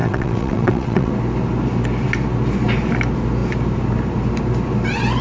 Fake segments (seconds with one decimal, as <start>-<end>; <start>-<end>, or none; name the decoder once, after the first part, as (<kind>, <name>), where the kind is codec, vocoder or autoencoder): 0.0-1.1 (vocoder, WaveNeXt)